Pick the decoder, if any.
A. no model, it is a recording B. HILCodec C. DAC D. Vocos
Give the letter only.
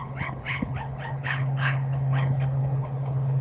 B